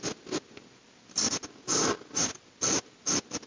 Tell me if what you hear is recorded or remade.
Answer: recorded